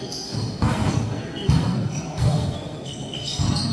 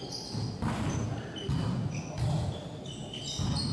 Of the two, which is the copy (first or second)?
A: first